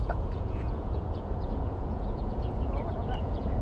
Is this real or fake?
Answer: fake